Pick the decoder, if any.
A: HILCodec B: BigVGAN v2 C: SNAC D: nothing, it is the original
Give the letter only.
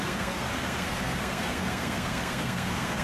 C